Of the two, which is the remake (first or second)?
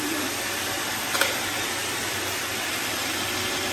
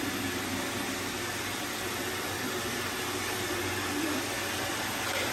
first